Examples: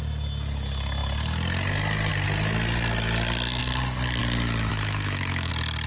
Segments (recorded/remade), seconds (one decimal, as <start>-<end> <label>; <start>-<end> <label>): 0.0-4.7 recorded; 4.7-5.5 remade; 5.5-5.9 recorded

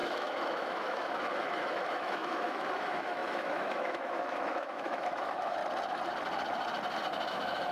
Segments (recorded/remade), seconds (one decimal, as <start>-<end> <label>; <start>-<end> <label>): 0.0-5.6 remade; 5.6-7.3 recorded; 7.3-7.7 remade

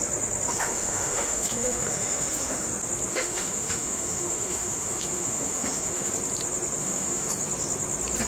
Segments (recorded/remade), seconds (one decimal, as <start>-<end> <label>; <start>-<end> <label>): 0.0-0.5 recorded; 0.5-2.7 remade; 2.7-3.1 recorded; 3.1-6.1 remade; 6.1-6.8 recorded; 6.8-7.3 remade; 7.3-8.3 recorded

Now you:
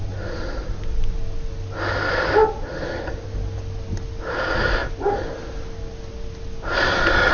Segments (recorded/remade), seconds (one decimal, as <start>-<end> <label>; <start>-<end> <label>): 0.0-7.3 recorded

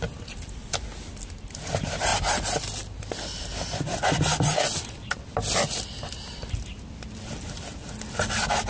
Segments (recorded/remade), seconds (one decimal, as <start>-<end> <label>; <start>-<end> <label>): 0.0-8.7 recorded

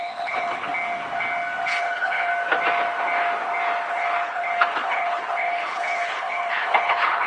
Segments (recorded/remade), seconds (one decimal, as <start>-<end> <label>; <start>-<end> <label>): 0.0-0.7 remade; 0.7-1.8 recorded; 1.8-2.3 remade; 2.3-3.9 recorded; 3.9-7.3 remade